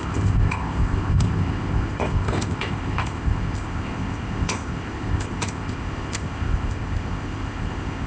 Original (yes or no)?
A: no